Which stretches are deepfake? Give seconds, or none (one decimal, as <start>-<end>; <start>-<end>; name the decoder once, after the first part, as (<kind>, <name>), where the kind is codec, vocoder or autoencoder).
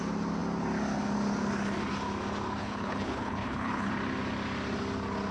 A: 2.6-3.9 (codec, HILCodec)